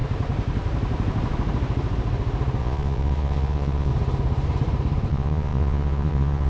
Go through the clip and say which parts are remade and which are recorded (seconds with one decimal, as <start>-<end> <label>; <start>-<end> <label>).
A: 0.0-2.6 recorded; 2.6-3.9 remade; 3.9-5.1 recorded; 5.1-6.5 remade